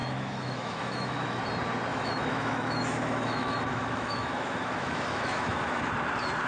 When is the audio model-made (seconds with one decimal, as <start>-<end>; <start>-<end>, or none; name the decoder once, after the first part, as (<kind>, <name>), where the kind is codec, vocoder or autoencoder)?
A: 0.0-1.4 (autoencoder, DAC-VAE); 1.9-5.8